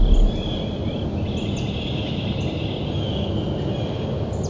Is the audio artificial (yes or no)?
no